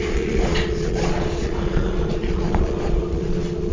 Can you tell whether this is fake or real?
fake